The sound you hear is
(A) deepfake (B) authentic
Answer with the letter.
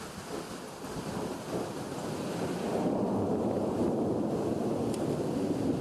A